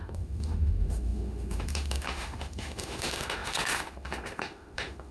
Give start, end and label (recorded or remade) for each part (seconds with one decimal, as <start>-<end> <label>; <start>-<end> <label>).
0.0-5.1 remade